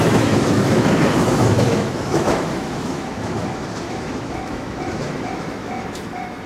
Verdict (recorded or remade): remade